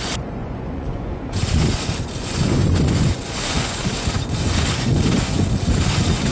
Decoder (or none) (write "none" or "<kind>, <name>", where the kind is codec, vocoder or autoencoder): vocoder, Vocos